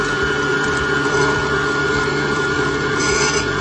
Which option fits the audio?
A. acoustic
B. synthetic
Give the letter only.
B